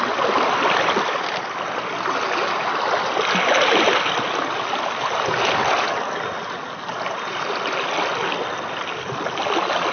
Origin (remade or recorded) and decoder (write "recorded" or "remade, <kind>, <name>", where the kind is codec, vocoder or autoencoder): recorded